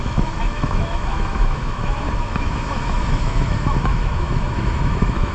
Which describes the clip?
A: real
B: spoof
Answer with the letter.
B